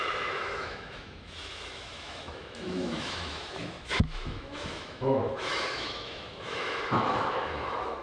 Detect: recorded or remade remade